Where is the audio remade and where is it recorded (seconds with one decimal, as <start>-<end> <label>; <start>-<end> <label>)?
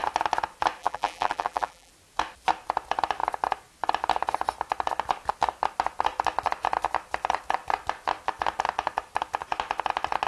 0.0-0.8 recorded; 0.8-1.9 remade; 1.9-10.3 recorded